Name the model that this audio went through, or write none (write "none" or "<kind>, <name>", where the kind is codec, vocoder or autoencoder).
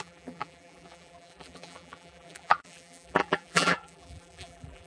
vocoder, BigVGAN v2